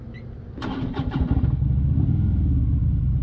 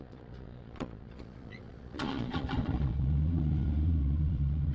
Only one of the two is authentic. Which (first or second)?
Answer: first